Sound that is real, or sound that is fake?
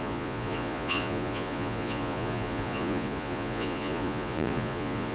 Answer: fake